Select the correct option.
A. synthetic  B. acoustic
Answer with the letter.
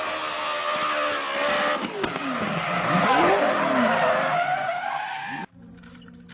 B